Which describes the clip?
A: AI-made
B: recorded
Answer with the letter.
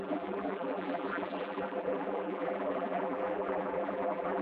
A